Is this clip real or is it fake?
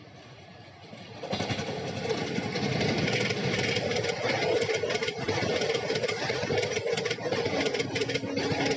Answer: fake